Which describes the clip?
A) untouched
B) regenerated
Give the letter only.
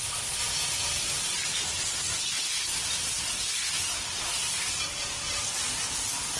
A